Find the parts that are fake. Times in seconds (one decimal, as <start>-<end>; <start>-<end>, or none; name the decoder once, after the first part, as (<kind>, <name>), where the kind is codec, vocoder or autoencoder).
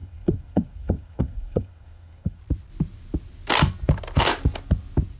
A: 0.0-2.4 (codec, SNAC)